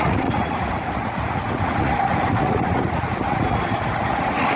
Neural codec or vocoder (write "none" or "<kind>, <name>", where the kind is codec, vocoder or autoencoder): vocoder, Vocos